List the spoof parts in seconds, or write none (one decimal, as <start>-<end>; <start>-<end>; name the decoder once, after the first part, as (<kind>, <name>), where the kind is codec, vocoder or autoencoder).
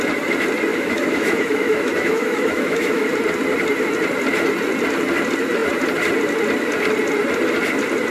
0.7-3.1 (autoencoder, DAC-VAE)